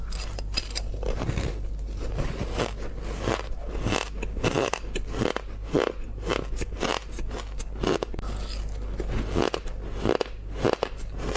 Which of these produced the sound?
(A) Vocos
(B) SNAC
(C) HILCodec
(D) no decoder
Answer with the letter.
D